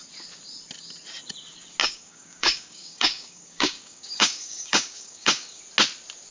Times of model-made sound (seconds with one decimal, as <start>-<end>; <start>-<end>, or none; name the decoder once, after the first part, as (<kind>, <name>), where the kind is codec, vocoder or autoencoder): 1.8-5.6 (codec, DAC)